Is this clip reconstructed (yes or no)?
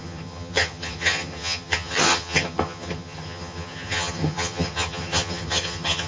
yes